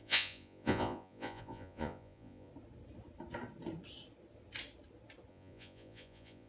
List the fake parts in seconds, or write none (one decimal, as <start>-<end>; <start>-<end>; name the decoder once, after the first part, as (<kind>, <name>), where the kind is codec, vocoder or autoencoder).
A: 0.0-2.5 (vocoder, Vocos); 5.3-6.5